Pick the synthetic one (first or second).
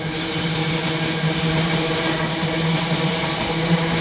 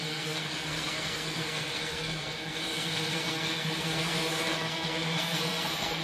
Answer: second